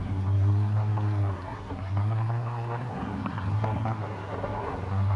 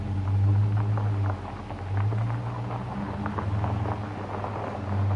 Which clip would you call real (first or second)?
second